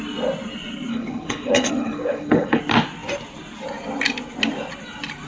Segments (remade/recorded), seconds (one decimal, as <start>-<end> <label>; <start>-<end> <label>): 0.0-0.9 recorded; 0.9-2.6 remade; 2.6-5.3 recorded